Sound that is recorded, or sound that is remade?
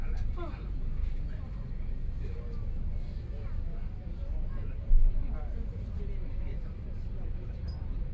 recorded